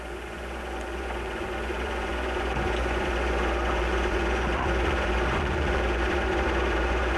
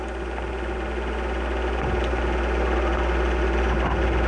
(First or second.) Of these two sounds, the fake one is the first